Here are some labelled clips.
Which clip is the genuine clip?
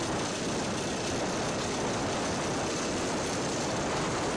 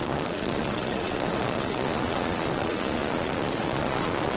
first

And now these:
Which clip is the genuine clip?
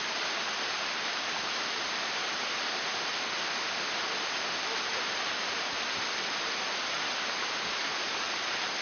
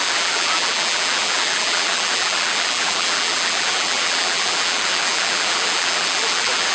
first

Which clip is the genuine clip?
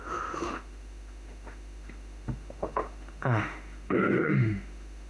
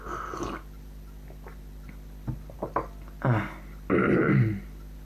second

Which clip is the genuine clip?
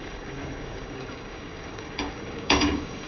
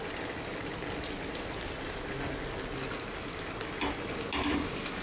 second